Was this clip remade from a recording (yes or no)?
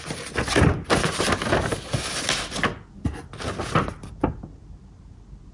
no